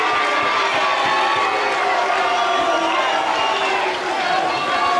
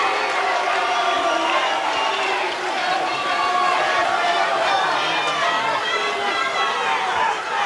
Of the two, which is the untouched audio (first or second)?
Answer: first